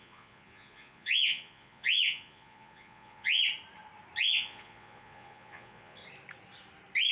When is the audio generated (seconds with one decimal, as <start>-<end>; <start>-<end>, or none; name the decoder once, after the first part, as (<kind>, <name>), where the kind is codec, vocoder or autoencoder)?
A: 0.0-3.4 (vocoder, Vocos); 4.2-6.0